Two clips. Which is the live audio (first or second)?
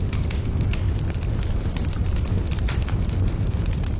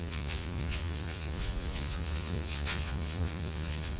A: first